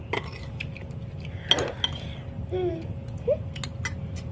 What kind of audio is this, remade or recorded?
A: recorded